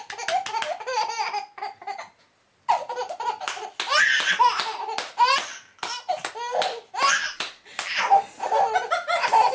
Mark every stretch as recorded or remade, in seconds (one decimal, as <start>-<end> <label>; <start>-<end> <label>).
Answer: 0.0-9.5 recorded